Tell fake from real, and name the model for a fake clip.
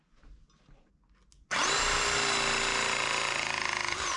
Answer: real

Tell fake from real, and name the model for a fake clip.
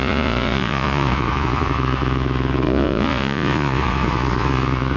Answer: fake, vocoder, Vocos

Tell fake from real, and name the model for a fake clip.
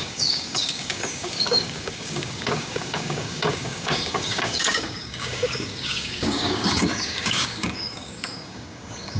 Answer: fake, codec, DAC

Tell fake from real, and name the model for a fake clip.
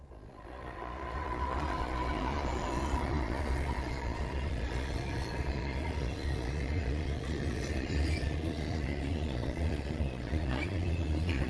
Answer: fake, vocoder, Vocos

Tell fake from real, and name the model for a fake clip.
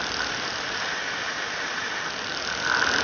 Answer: real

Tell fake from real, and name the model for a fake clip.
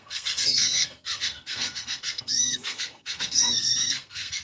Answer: fake, codec, SNAC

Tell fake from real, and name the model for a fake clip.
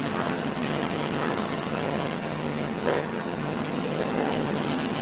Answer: fake, vocoder, HiFi-GAN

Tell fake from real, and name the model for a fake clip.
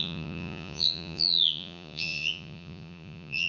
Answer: fake, vocoder, Vocos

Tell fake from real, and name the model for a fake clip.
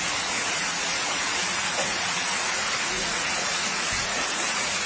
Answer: fake, vocoder, Vocos